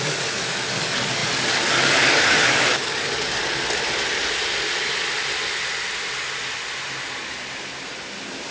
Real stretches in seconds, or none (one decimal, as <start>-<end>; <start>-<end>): 3.4-8.5